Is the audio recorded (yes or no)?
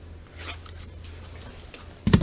yes